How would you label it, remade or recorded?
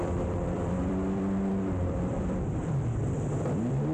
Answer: remade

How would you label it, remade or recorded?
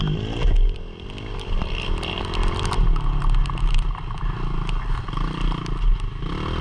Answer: recorded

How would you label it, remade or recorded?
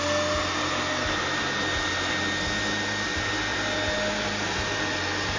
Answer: recorded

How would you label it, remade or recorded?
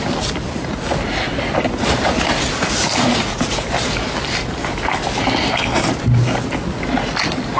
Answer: recorded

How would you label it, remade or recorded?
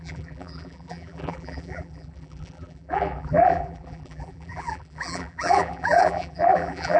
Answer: remade